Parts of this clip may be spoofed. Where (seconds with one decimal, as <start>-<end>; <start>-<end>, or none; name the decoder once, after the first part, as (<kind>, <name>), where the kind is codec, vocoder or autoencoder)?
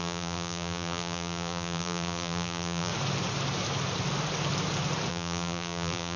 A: 0.0-2.9 (vocoder, BigVGAN v2); 5.1-6.2